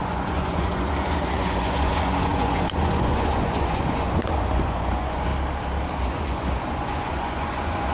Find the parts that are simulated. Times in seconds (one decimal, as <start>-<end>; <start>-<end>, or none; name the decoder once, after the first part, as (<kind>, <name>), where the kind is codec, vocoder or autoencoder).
0.0-5.3 (vocoder, Vocos); 6.0-7.9